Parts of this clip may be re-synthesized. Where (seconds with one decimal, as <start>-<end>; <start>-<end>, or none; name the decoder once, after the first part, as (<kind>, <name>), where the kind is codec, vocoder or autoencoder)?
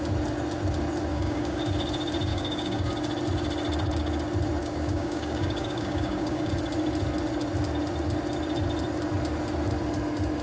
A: 1.1-1.6 (codec, DAC); 2.3-2.9; 4.6-6.5